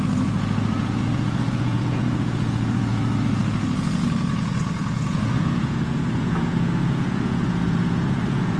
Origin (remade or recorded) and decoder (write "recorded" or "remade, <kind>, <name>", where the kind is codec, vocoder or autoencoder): remade, vocoder, Vocos